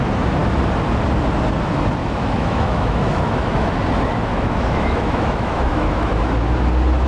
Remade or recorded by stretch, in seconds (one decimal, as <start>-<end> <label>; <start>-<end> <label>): 0.0-2.0 recorded; 2.0-3.7 remade; 3.7-4.3 recorded; 4.3-6.3 remade; 6.3-7.1 recorded